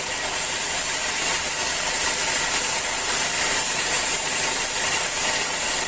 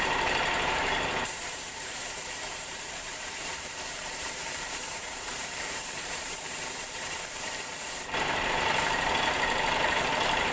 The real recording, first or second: first